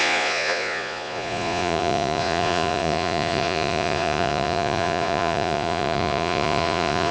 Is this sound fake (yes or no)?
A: yes